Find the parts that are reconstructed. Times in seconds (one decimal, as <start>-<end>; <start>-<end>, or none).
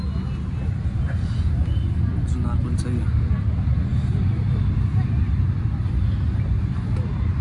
none